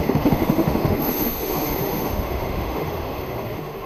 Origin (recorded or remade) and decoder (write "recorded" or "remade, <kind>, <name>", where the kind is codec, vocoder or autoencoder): remade, autoencoder, DAC-VAE